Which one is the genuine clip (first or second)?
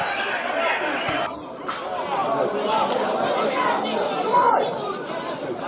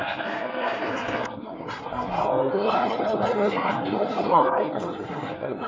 first